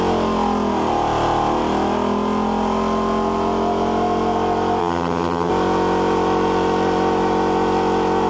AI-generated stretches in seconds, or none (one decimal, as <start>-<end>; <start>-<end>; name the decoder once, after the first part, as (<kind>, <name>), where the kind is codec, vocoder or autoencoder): 4.8-5.5 (vocoder, HiFi-GAN)